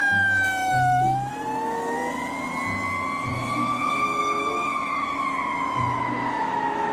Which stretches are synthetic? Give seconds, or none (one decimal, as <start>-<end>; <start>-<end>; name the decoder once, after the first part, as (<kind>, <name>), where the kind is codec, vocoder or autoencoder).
0.6-1.3 (autoencoder, DAC-VAE); 3.3-6.9